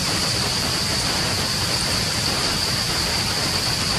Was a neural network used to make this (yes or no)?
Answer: no